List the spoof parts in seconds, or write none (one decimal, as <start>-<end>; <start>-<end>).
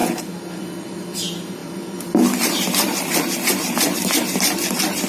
1.6-5.1